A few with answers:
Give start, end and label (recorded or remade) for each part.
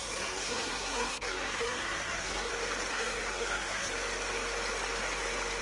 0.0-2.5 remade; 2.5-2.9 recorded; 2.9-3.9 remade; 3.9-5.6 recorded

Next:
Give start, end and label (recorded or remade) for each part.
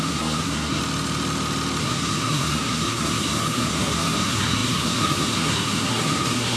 0.0-0.8 remade; 0.8-1.8 recorded; 1.8-6.6 remade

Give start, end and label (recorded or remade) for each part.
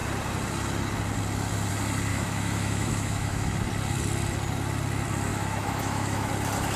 0.0-2.1 recorded; 2.1-3.5 remade; 3.5-5.3 recorded; 5.3-6.3 remade; 6.3-6.8 recorded